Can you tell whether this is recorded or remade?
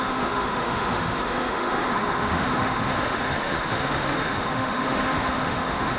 remade